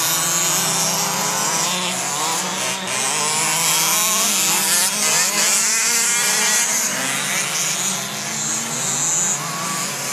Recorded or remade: recorded